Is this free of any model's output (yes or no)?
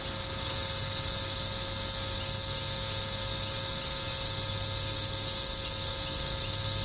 yes